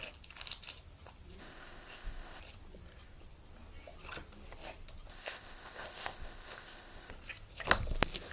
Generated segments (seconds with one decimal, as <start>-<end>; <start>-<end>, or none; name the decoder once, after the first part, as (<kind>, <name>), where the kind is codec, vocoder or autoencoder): 1.4-2.4 (codec, ZipCodec); 5.1-7.1